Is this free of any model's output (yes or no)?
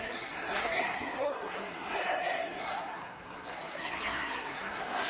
no